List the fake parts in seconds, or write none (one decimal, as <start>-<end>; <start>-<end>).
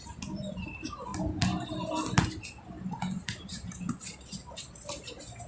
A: 0.0-1.1; 3.2-5.5